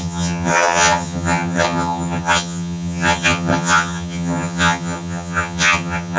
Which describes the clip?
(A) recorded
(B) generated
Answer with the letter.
B